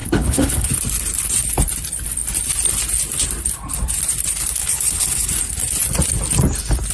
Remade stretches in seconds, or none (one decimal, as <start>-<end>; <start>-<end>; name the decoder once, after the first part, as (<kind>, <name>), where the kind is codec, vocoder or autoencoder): 0.0-0.7 (codec, HILCodec); 4.6-5.3